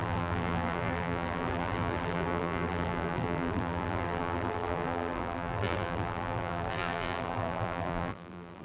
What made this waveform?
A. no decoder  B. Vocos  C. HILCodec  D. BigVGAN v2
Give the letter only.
D